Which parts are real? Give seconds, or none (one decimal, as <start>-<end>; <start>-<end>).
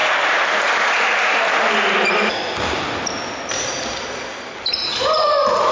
0.0-3.4